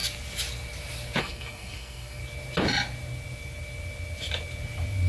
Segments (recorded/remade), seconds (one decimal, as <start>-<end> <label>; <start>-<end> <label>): 0.0-1.2 recorded; 1.2-2.2 remade; 2.2-5.1 recorded